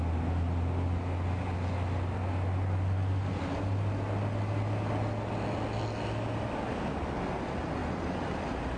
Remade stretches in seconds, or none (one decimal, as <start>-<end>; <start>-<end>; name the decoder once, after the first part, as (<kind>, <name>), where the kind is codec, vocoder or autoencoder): none